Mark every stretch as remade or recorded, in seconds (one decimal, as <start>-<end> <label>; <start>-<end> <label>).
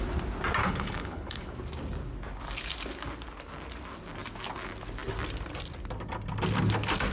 0.0-0.6 recorded; 0.6-1.5 remade; 1.5-7.1 recorded